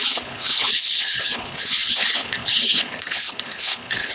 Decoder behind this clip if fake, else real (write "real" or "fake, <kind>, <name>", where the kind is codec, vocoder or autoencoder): fake, codec, HILCodec